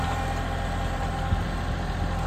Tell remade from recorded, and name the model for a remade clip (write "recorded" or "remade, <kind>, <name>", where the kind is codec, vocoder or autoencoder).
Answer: recorded